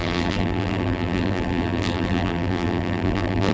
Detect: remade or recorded remade